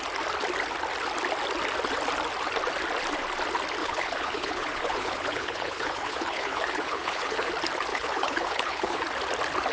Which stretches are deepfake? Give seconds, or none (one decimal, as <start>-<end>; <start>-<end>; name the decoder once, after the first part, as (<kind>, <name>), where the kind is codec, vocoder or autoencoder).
3.8-7.5 (codec, HILCodec); 7.9-9.0